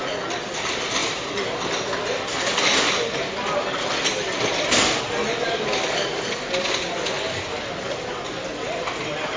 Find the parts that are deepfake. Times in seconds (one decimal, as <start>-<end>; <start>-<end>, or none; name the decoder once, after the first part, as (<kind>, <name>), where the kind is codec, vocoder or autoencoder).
none

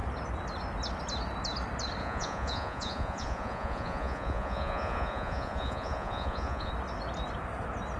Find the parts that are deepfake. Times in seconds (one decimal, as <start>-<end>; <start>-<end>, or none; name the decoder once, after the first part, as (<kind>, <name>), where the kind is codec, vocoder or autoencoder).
2.0-6.7 (vocoder, Vocos)

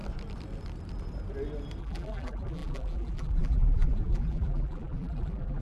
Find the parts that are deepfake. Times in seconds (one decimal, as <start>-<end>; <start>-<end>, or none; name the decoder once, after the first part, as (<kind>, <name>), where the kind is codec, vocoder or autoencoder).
1.8-5.6 (vocoder, BigVGAN v2)

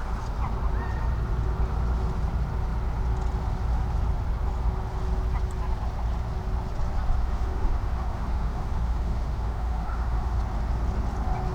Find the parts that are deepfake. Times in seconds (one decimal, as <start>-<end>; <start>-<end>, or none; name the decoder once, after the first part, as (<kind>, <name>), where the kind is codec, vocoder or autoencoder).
7.2-10.4 (autoencoder, DAC-VAE)

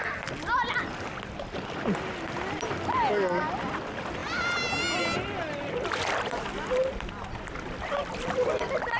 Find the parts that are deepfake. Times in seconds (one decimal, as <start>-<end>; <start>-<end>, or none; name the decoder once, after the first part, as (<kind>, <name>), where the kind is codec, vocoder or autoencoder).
none

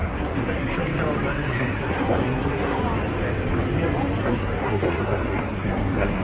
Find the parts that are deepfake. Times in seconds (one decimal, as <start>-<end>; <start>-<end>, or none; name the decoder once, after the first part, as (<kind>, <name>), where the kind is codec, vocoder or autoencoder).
0.0-0.8 (codec, SNAC); 1.3-2.8; 4.2-6.2

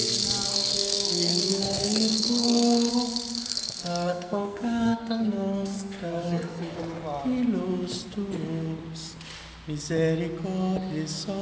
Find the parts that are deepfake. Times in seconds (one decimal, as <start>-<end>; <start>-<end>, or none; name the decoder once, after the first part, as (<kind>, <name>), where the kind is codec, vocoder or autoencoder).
0.5-2.9 (codec, SNAC); 3.5-6.8

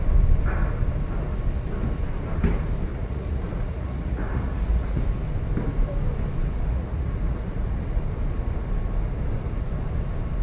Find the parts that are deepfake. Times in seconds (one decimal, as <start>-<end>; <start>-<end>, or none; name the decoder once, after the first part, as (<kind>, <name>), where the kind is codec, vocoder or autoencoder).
2.9-5.0 (vocoder, Vocos); 6.7-8.0